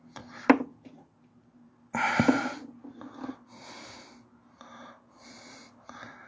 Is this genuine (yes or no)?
yes